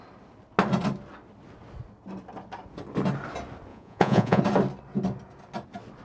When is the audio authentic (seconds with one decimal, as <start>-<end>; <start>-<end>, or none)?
0.0-3.7; 4.4-6.0